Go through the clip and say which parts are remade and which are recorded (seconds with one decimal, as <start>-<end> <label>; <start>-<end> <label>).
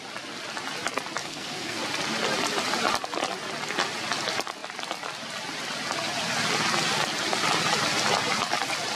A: 0.0-1.2 recorded; 1.2-1.8 remade; 1.8-9.0 recorded